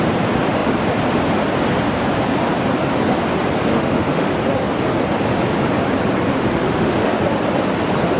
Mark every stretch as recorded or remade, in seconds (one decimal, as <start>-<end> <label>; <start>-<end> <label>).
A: 0.0-3.7 recorded; 3.7-4.3 remade; 4.3-6.3 recorded; 6.3-7.2 remade; 7.2-8.2 recorded